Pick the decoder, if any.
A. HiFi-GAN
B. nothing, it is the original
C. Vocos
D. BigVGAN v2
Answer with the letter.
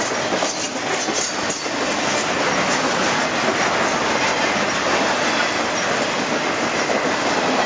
B